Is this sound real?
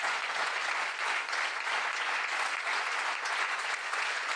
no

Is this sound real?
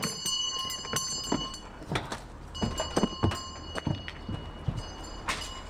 yes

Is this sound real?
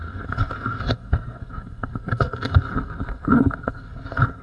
no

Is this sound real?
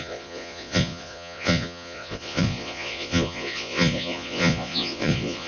no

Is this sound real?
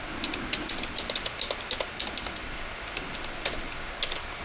yes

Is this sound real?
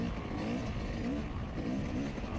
yes